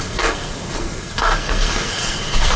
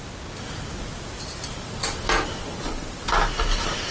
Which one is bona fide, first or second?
second